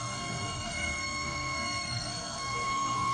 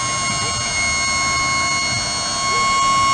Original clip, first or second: second